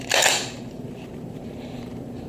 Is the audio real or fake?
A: fake